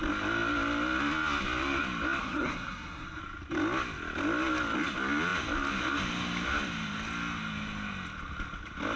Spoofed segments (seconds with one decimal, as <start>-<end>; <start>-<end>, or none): 2.2-3.2